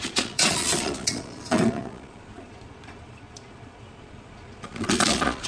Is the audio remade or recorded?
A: remade